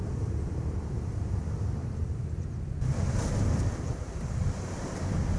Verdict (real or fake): real